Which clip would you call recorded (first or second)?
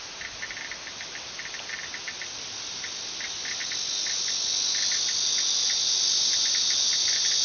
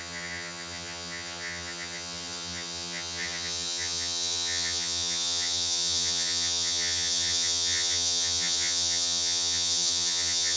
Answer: first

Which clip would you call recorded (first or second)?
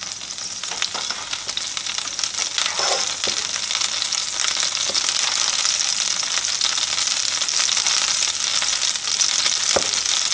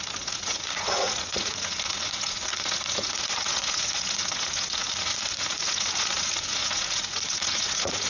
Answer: first